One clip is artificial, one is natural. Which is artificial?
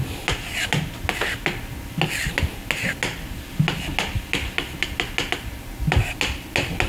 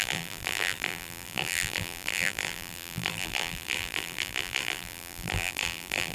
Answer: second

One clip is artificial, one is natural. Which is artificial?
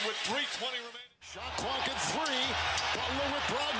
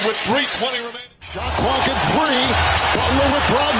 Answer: second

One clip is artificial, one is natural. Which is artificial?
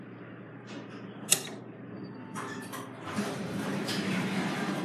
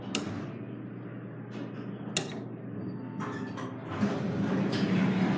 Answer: first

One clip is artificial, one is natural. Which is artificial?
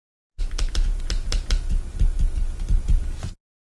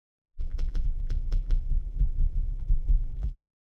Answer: second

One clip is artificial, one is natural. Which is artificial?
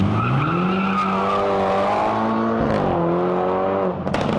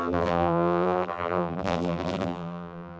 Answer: second